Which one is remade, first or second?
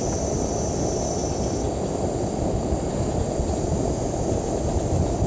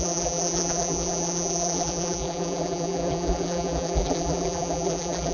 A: second